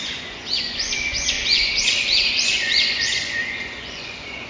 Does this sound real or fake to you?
fake